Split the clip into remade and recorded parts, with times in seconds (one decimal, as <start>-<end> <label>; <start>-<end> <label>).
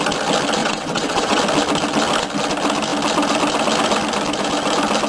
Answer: 0.0-0.6 recorded; 0.6-1.4 remade; 1.4-5.1 recorded